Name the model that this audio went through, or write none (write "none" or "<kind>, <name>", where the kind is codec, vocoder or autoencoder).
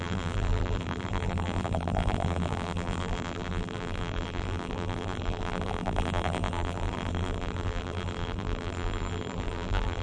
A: vocoder, BigVGAN v2